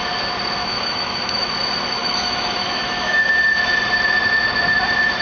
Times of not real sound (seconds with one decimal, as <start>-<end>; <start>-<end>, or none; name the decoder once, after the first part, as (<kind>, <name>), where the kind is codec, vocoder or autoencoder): 0.6-1.5 (autoencoder, DAC-VAE); 2.0-3.3